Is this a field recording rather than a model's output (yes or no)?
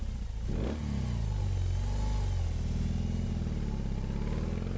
yes